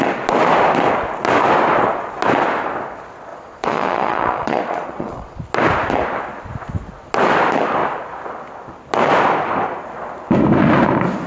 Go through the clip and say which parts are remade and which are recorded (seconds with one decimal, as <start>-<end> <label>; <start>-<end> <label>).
0.0-3.3 recorded; 3.3-5.4 remade; 5.4-11.3 recorded